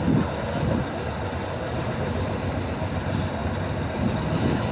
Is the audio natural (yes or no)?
yes